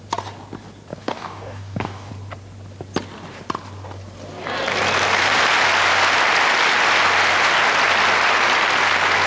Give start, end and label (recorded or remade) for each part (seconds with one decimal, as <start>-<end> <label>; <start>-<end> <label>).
0.0-0.9 recorded; 0.9-2.1 remade; 2.1-9.3 recorded